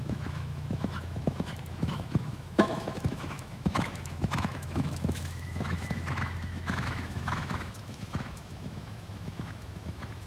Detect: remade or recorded remade